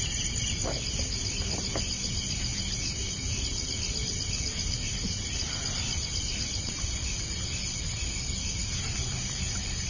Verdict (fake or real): real